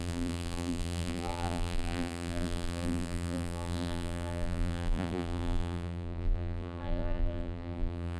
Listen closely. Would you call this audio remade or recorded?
remade